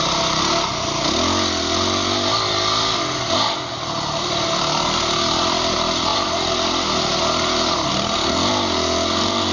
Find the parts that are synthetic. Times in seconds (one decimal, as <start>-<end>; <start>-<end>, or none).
none

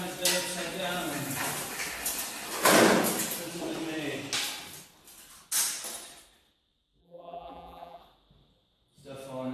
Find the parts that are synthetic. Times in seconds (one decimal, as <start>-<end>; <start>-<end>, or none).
7.0-8.0

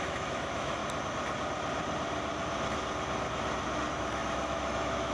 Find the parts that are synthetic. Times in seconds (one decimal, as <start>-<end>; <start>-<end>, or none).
0.0-0.8; 3.9-5.1

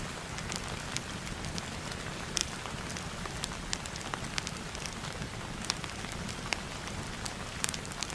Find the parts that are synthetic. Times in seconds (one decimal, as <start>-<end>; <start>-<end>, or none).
2.4-6.3; 6.8-8.1